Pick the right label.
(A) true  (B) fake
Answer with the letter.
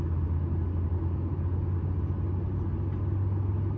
A